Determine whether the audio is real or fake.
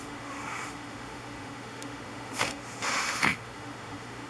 fake